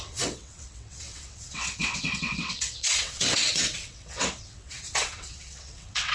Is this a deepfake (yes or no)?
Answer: yes